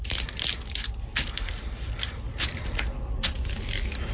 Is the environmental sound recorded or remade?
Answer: recorded